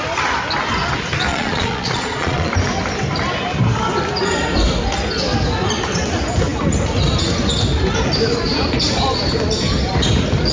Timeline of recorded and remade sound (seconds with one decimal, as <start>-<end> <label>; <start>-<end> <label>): 0.0-1.3 recorded; 1.3-2.5 remade; 2.5-10.5 recorded